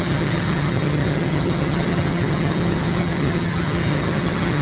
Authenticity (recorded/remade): remade